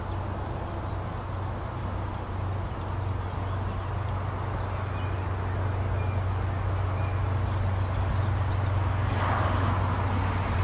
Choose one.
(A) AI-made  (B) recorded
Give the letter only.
B